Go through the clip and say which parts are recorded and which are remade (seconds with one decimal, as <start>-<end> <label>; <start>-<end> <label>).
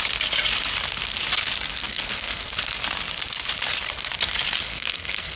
0.0-1.8 recorded; 1.8-2.5 remade; 2.5-4.6 recorded; 4.6-5.4 remade